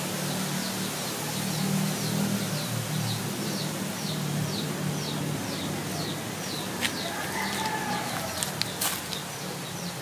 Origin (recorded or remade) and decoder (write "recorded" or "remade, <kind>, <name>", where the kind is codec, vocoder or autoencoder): recorded